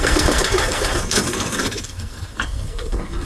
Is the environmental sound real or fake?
fake